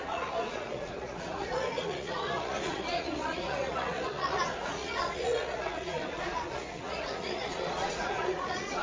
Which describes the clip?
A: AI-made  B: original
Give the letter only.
A